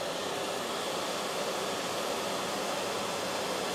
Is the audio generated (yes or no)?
no